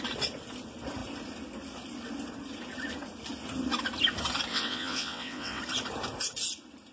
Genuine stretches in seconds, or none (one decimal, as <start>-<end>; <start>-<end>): 0.0-4.5; 5.6-6.9